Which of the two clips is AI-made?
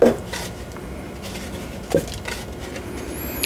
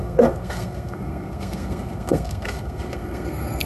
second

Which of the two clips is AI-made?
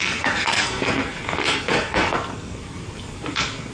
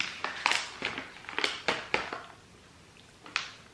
first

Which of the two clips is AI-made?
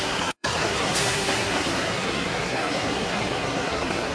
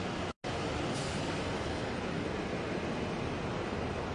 first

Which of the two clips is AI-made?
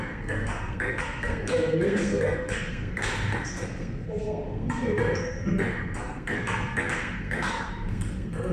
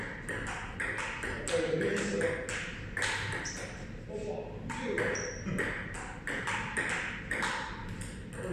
first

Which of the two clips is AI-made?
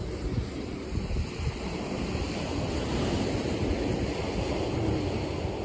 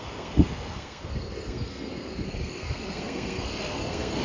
second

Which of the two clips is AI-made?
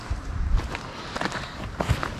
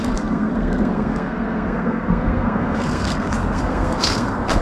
second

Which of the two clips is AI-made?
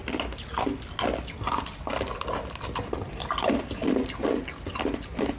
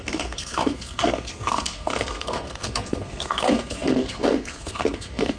second